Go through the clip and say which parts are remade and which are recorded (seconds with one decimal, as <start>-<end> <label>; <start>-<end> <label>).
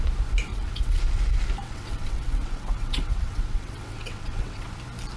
0.0-0.5 recorded; 0.5-1.0 remade; 1.0-1.6 recorded; 1.6-4.7 remade; 4.7-5.2 recorded